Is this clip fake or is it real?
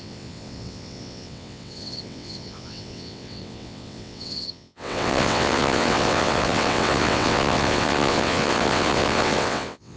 fake